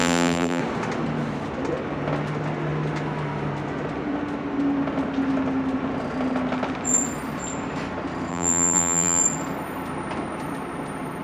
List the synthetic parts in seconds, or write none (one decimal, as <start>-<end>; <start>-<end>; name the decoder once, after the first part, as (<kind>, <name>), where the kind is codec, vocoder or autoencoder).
0.0-0.6 (vocoder, BigVGAN v2); 8.3-9.2